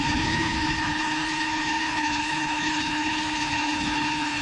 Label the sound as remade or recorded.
remade